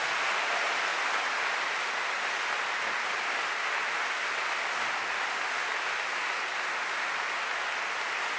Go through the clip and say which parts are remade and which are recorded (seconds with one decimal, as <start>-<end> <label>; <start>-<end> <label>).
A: 0.0-8.4 recorded